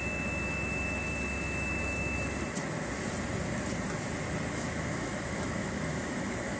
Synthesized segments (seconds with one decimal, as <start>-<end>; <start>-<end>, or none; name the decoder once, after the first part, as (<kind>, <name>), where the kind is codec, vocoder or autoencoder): 0.0-2.4 (autoencoder, DAC-VAE); 4.5-6.6